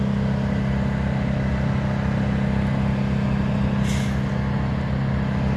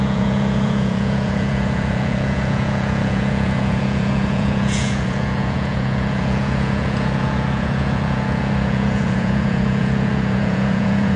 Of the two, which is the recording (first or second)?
first